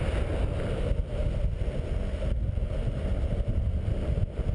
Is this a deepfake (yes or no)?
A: no